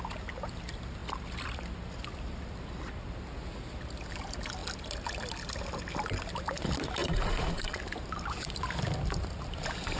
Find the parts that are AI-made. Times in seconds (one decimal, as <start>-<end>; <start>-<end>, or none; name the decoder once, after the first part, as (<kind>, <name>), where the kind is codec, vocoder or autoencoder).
7.0-7.8 (vocoder, Vocos)